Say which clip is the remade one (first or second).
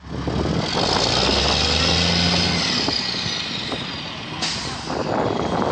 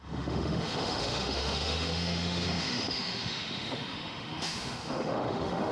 second